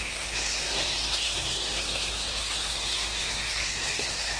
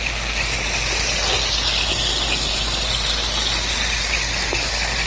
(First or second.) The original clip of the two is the second